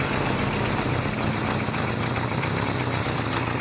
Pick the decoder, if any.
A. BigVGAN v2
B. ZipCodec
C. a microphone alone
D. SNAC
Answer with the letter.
C